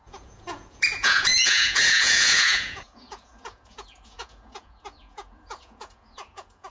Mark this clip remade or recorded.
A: remade